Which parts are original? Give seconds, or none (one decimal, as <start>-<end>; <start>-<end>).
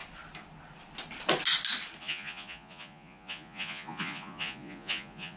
0.0-2.0